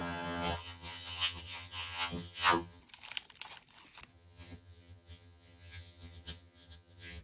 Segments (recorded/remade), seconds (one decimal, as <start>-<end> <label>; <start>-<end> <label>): 0.0-2.8 remade; 2.8-4.1 recorded; 4.1-7.2 remade